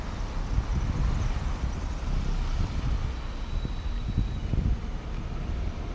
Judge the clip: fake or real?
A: real